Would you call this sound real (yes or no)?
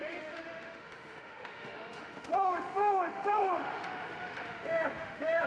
no